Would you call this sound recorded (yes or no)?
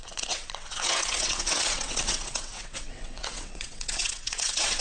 no